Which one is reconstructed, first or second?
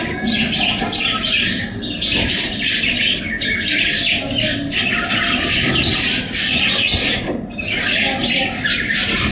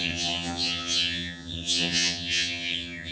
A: second